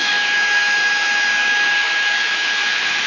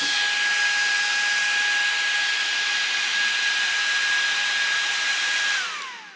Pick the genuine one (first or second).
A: second